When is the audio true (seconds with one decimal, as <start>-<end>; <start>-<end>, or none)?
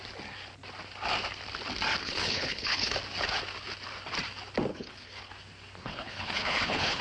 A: 0.0-2.0; 2.9-4.7; 5.3-5.8